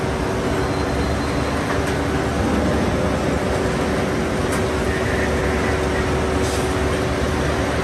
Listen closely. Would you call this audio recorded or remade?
recorded